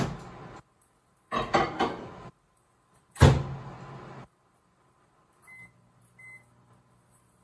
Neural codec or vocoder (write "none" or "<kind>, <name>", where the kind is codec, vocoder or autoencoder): none